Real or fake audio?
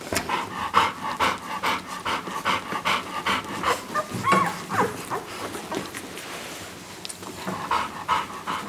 real